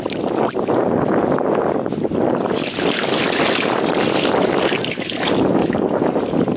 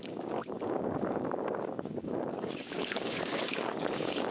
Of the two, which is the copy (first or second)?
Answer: second